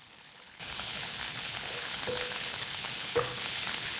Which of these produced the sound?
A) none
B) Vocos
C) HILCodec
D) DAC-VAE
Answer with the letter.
C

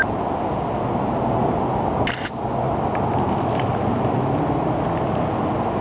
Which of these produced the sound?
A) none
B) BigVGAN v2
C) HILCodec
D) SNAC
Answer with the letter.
A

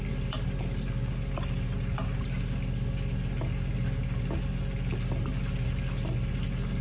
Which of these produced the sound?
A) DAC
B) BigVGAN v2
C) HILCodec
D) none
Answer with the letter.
D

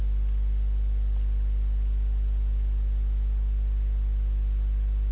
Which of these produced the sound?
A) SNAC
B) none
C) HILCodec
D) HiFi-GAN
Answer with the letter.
B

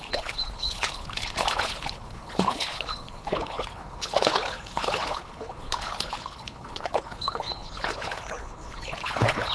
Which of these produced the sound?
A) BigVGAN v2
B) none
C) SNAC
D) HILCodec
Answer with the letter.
D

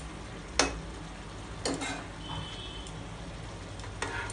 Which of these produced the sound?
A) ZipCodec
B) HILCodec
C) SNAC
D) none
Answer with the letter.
D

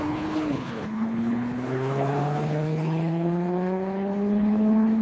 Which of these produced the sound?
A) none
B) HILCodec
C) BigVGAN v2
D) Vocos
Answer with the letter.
B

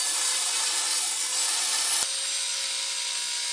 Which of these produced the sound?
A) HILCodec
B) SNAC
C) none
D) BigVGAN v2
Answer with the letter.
C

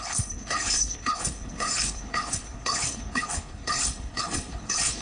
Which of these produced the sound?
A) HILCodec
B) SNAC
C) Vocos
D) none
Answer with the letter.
A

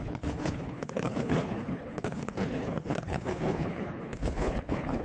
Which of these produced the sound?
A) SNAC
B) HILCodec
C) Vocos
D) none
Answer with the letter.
B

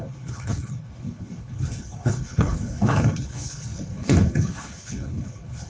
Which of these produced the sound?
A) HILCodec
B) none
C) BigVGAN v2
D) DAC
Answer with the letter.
A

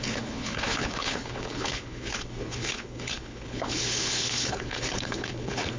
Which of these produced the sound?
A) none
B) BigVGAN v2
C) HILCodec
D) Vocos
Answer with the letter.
C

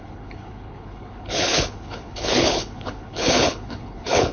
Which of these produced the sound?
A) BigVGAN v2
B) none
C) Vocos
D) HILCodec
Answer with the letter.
D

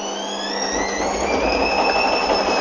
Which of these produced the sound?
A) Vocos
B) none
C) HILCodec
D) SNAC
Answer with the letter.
B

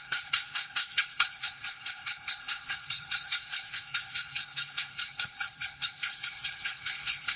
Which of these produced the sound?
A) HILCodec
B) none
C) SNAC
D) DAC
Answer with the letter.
A